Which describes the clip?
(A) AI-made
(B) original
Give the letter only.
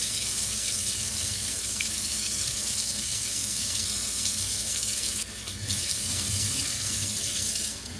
A